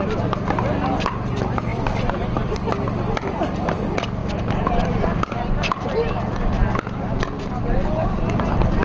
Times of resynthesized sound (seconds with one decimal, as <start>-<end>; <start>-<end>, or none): none